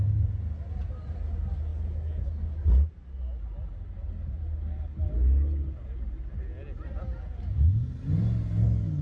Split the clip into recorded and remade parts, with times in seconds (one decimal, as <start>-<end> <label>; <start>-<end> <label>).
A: 0.0-9.0 recorded